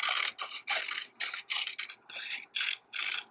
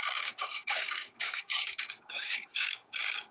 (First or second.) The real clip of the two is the first